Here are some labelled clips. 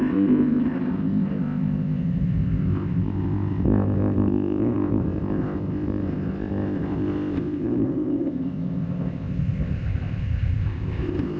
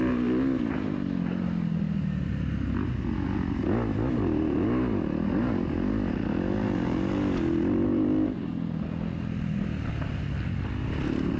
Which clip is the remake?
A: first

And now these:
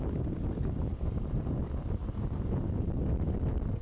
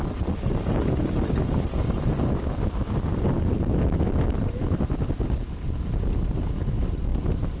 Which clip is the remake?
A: first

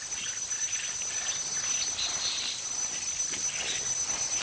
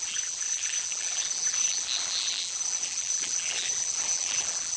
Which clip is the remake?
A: second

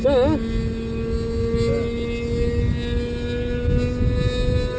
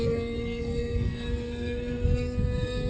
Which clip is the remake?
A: second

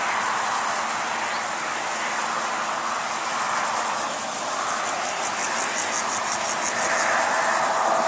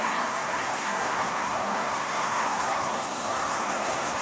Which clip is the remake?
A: second